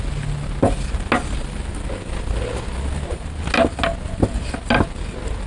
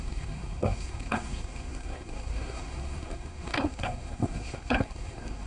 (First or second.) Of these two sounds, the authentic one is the first